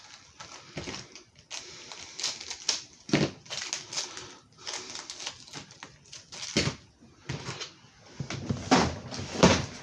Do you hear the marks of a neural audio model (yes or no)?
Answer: no